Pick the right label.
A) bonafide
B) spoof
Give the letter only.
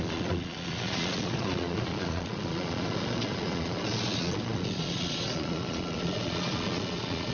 B